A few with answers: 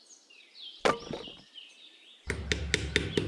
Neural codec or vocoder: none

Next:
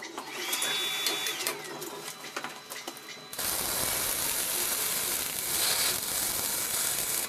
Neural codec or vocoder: none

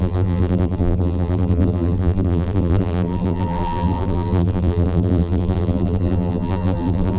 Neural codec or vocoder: vocoder, BigVGAN v2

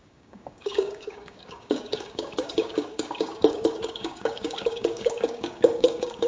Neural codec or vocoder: codec, DAC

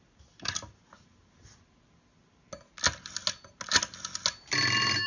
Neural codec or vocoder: none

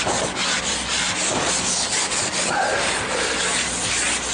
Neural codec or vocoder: none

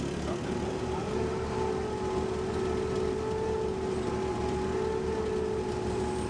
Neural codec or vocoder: none